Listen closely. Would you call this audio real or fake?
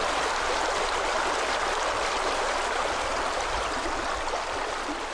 real